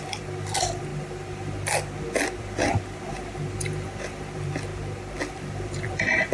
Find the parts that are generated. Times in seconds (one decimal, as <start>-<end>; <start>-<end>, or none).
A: 0.0-0.9; 2.4-4.7; 5.4-6.3